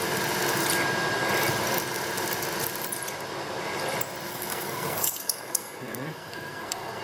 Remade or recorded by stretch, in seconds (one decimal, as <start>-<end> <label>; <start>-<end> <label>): 0.0-4.3 recorded; 4.3-7.0 remade